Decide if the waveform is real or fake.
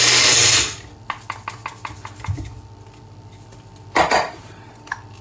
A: real